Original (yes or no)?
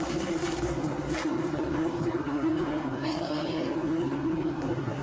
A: no